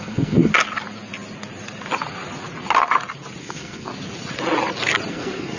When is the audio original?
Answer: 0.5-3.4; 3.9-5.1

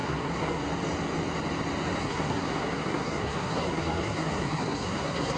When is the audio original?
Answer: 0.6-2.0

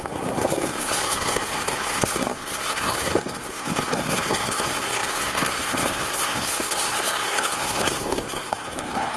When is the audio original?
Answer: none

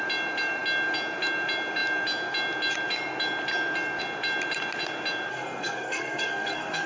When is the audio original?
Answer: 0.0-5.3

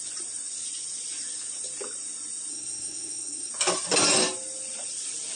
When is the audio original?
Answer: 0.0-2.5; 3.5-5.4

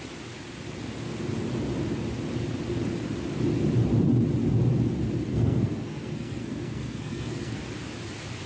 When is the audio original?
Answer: 0.0-5.3; 7.6-8.5

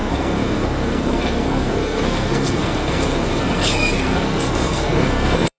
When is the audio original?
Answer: none

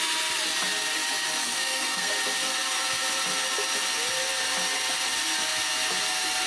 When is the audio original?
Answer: 0.0-1.4; 2.1-6.5